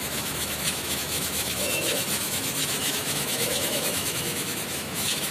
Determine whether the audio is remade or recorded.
remade